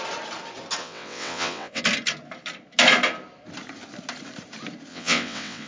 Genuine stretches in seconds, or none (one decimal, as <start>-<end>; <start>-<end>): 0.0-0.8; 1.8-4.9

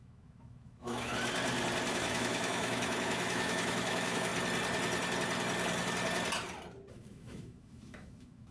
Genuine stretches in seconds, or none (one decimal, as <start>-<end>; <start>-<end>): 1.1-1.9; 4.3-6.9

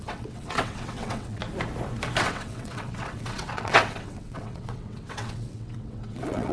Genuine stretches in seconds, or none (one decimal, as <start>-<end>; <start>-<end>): 1.4-2.2

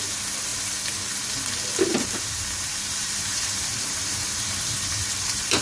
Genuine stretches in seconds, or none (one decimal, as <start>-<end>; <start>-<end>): 0.0-1.9